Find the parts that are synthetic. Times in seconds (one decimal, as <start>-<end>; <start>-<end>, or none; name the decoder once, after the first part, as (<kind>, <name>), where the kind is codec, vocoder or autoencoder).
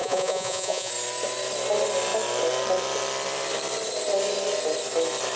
0.0-0.9 (vocoder, Vocos)